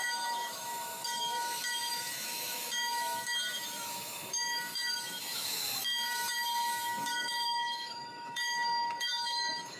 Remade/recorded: remade